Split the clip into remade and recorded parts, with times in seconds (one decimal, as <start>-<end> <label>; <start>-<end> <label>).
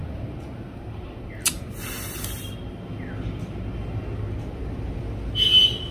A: 0.0-5.9 recorded